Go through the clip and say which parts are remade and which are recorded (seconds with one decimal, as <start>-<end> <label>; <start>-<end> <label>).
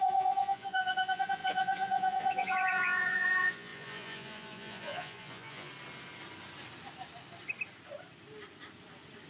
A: 0.0-5.7 remade; 5.7-9.3 recorded